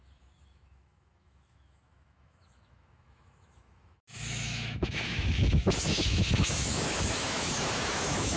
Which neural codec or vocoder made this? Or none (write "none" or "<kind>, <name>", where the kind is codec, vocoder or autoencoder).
autoencoder, DAC-VAE